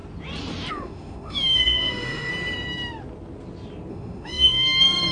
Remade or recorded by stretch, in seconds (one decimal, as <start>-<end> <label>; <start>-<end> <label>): 0.0-0.7 recorded; 0.7-2.3 remade; 2.3-3.9 recorded; 3.9-5.1 remade